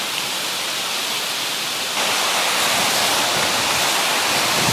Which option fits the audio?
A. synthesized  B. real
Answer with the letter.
A